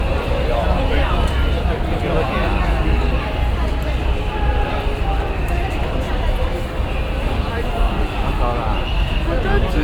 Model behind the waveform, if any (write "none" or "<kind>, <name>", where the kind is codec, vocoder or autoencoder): vocoder, BigVGAN v2